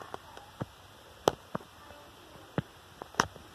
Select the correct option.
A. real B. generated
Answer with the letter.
A